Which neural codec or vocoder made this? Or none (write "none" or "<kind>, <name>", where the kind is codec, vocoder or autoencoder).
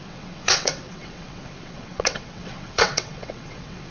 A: vocoder, WaveNeXt